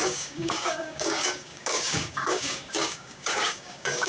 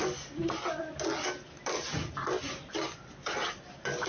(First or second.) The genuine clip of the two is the second